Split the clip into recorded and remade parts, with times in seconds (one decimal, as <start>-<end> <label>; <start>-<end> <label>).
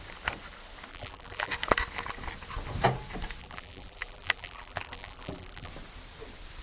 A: 0.0-0.9 recorded; 0.9-1.5 remade; 1.5-3.4 recorded; 3.4-5.7 remade; 5.7-6.6 recorded